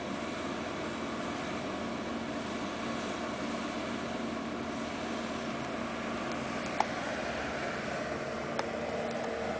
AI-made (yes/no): no